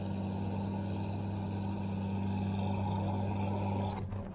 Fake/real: real